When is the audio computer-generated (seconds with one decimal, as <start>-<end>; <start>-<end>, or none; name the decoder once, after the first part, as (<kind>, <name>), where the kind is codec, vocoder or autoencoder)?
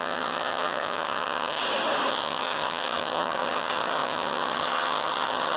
0.0-1.6 (vocoder, HiFi-GAN); 2.1-5.6